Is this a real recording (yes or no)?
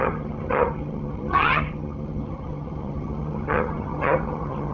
no